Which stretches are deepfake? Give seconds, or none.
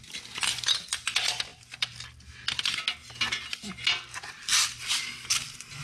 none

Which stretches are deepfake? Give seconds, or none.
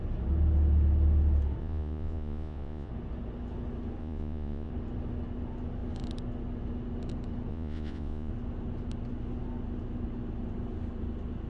1.6-2.9; 4.0-4.7; 7.5-8.3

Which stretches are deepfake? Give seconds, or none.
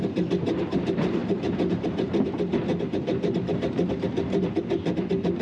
0.0-5.4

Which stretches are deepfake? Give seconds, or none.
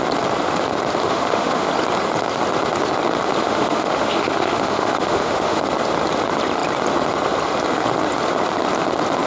1.0-1.7; 3.4-5.6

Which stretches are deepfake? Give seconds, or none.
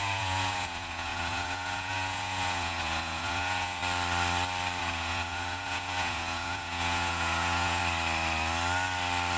0.0-3.8; 4.8-7.8